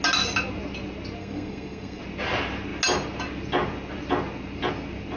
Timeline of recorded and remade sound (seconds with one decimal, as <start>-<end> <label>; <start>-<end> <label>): 0.0-1.2 recorded; 1.2-2.0 remade; 2.0-5.2 recorded